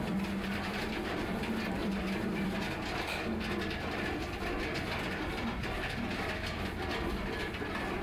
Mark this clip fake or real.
fake